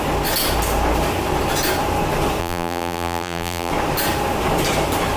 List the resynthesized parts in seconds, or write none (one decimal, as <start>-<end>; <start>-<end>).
2.4-3.7